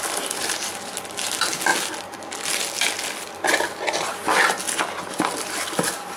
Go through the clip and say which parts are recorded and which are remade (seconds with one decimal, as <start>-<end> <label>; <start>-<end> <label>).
0.0-6.2 recorded